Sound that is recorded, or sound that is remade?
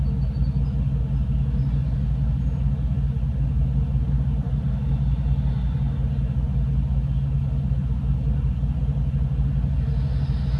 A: recorded